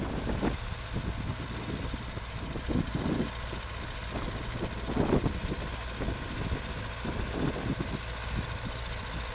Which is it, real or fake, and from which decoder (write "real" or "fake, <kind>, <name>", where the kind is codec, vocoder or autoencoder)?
real